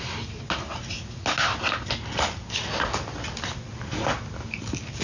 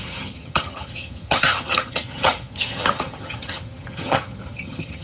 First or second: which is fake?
second